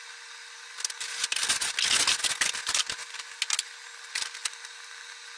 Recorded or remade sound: recorded